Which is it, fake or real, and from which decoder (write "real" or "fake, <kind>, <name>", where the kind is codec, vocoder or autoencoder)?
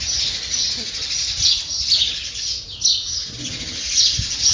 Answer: real